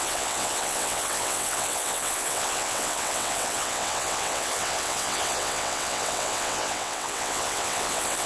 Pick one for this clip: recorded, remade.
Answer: remade